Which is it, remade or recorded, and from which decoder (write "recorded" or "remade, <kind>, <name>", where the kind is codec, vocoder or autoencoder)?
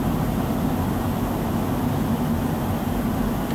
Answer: recorded